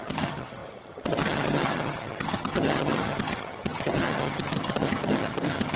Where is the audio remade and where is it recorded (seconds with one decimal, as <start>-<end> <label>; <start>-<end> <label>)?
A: 0.0-5.8 remade